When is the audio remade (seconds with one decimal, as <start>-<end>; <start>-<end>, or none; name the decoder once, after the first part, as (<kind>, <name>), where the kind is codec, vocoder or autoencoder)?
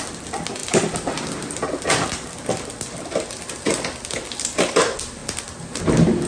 none